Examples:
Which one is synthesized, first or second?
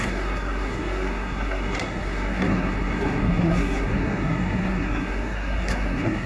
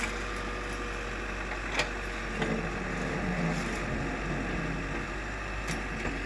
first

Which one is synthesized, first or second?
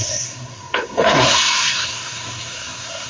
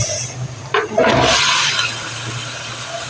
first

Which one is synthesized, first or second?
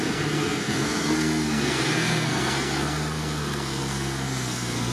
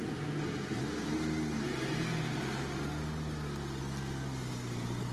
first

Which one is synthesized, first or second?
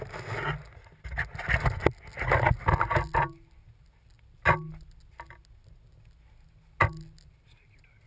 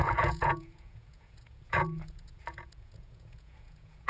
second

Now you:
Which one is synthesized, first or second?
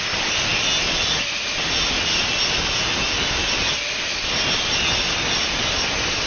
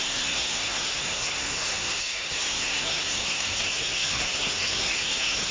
second